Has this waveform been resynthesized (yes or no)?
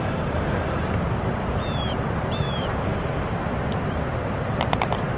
yes